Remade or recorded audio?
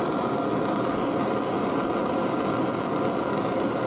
recorded